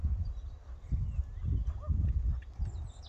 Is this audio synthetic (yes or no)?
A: no